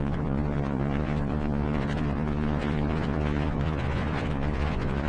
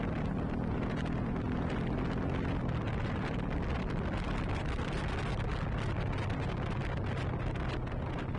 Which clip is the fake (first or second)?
first